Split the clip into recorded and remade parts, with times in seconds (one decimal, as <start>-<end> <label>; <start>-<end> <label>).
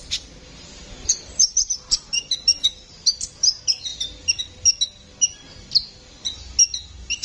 0.0-0.7 recorded; 0.7-3.3 remade; 3.3-7.2 recorded